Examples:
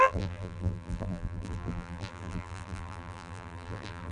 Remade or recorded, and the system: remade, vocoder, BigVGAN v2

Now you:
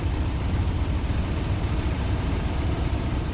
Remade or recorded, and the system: remade, vocoder, BigVGAN v2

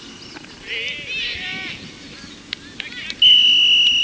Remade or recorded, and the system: recorded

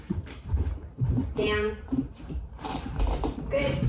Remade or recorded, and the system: remade, vocoder, BigVGAN v2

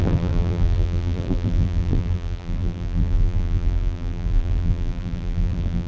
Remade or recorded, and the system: remade, vocoder, BigVGAN v2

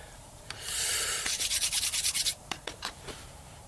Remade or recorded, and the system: remade, vocoder, BigVGAN v2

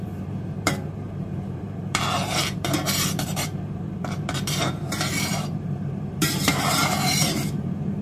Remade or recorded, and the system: remade, vocoder, BigVGAN v2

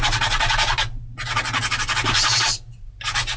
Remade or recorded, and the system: recorded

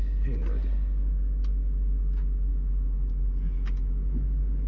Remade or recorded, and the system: recorded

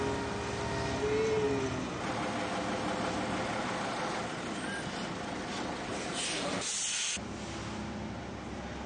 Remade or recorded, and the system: recorded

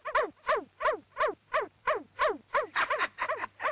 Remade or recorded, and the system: remade, vocoder, BigVGAN v2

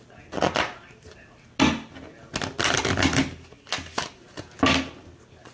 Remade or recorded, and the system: recorded